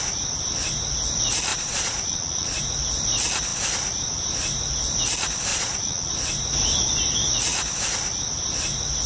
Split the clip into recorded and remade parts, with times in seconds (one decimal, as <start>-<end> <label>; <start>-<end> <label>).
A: 0.0-1.5 recorded; 1.5-2.6 remade; 2.6-5.5 recorded; 5.5-6.1 remade; 6.1-9.1 recorded